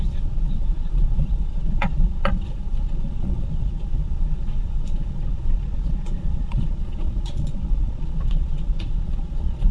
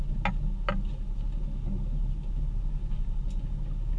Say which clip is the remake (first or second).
first